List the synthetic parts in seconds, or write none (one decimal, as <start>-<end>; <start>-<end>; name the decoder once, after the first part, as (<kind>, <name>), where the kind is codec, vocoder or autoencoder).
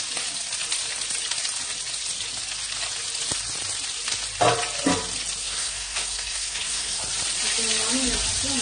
5.4-7.0 (codec, SNAC)